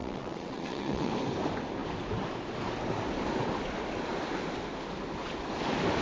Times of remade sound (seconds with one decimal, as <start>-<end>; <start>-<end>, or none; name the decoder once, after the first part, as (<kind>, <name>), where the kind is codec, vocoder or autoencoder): 0.0-1.1 (vocoder, WaveNeXt)